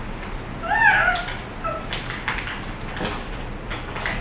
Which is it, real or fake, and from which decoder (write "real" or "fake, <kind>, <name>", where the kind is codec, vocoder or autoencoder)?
real